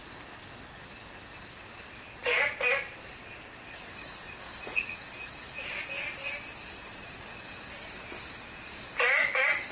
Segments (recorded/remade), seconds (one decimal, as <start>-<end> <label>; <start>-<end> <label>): 0.0-9.7 recorded